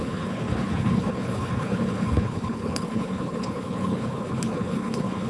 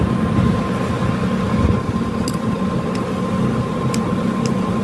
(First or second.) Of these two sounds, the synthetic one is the first